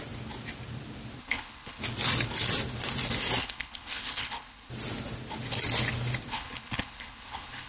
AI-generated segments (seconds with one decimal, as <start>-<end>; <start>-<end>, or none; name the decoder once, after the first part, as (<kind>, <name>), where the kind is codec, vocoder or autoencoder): 1.2-1.8 (codec, HILCodec); 3.4-4.7; 6.3-7.7